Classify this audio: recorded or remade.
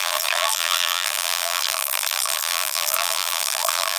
remade